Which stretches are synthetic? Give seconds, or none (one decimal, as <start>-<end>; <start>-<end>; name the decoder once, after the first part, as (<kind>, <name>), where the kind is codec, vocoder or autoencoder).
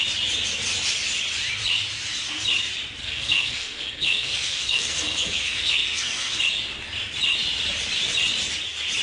3.0-6.4 (codec, SNAC)